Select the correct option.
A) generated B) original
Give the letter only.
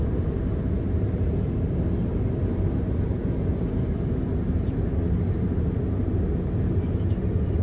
B